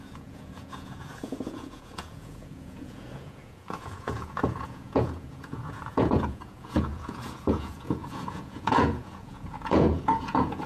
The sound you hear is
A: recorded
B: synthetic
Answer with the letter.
B